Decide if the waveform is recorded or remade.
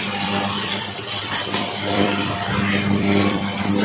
remade